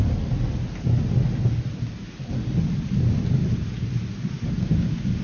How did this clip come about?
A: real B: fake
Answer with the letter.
A